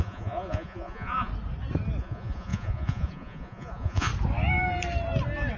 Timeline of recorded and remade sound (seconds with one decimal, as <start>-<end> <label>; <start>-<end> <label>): 0.0-1.3 remade; 1.3-2.0 recorded; 2.0-4.1 remade; 4.1-5.6 recorded